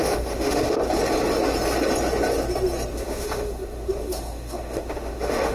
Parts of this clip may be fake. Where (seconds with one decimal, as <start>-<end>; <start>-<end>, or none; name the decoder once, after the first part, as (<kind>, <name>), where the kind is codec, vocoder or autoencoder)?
0.0-0.8 (autoencoder, DAC-VAE); 2.9-5.5